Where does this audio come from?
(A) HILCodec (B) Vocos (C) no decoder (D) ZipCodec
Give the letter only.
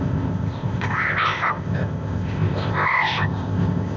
D